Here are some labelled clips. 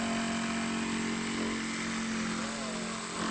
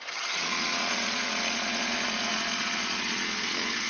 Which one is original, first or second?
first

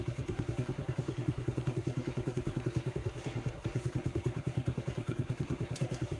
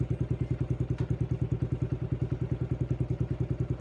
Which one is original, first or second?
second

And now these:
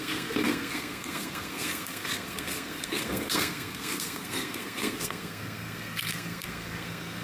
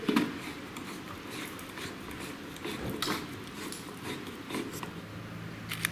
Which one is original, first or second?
second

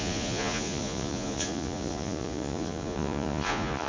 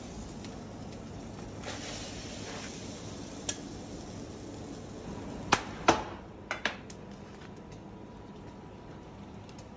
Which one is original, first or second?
second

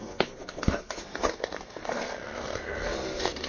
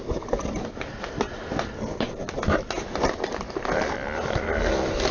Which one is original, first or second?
second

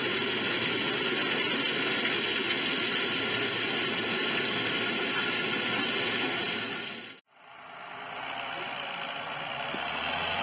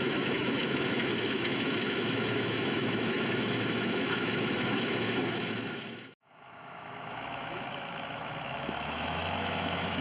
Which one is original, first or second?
first